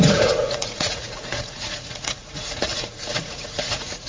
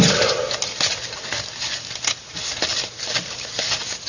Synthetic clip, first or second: first